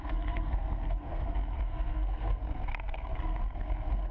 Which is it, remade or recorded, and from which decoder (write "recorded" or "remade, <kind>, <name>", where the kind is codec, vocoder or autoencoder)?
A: remade, codec, SNAC